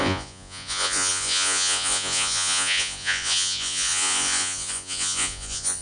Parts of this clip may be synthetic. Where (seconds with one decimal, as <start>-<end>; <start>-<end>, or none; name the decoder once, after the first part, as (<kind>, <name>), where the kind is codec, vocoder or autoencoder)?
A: 0.0-5.8 (vocoder, Vocos)